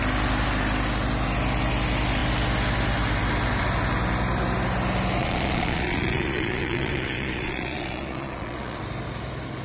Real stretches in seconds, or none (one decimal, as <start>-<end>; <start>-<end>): 0.0-5.2; 8.8-9.6